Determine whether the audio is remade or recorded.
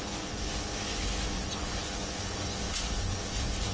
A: remade